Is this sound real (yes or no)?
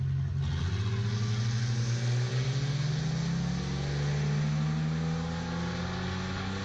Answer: yes